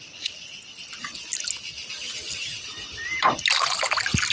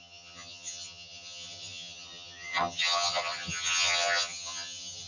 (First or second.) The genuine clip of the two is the first